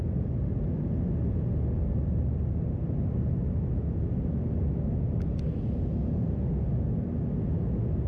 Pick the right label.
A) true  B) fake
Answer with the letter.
A